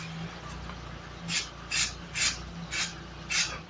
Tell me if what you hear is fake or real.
real